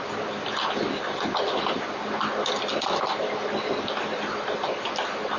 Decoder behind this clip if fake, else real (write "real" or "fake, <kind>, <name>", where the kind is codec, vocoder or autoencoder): real